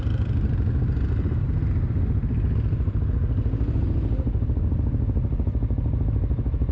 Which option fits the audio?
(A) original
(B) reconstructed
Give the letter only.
A